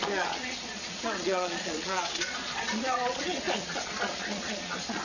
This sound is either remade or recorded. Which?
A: remade